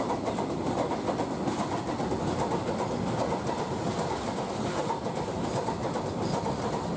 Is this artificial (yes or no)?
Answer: no